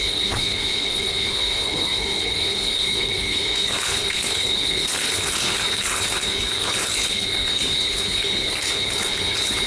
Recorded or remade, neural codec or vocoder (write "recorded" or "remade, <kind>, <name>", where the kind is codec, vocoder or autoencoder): remade, codec, HILCodec